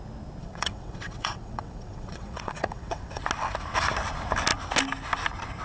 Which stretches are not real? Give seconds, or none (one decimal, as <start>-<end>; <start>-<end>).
0.4-3.2

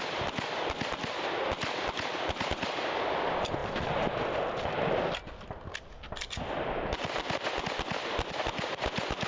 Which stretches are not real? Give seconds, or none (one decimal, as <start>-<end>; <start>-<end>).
none